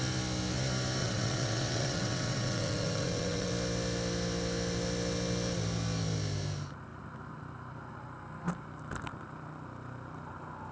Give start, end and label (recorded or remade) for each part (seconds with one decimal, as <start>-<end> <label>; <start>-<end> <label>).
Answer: 0.0-1.0 recorded; 1.0-3.5 remade; 3.5-10.7 recorded